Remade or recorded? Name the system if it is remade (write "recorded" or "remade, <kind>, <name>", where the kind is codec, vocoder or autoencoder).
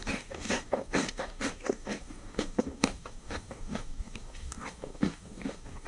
remade, codec, DAC